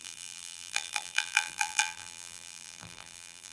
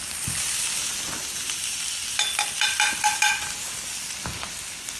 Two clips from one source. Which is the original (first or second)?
second